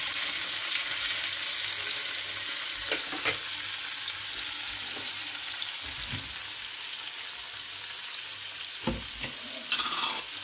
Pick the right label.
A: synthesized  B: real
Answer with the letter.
B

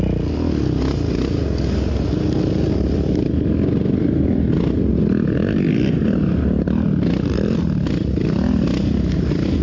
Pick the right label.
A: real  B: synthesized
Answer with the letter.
A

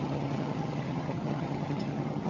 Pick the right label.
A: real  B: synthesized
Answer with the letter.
B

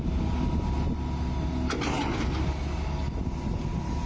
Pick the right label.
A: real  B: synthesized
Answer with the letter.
A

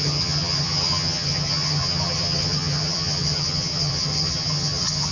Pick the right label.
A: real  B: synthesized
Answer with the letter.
B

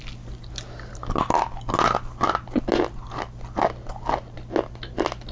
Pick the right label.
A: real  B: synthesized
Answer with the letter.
A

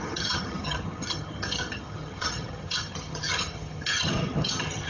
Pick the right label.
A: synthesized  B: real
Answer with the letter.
A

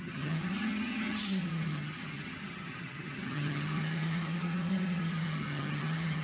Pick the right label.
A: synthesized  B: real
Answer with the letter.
A